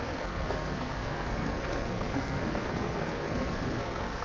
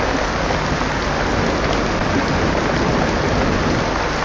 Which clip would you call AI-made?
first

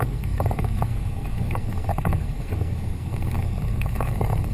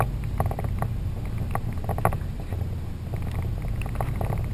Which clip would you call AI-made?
first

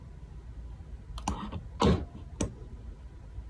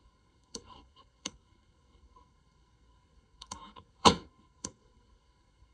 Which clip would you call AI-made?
second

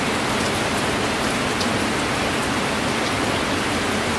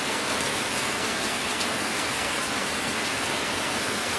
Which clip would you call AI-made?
second